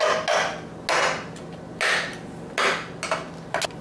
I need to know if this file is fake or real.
real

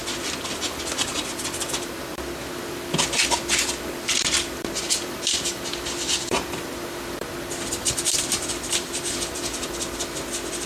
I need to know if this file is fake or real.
fake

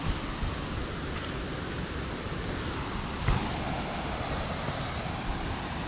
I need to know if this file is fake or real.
fake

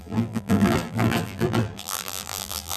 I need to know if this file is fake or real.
fake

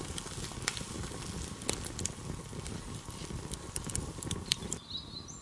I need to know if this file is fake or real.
real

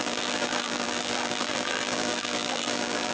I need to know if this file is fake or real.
fake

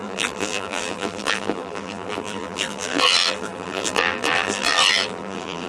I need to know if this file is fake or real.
fake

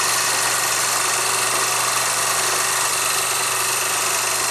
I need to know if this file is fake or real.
real